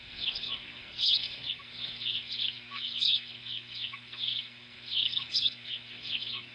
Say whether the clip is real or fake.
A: fake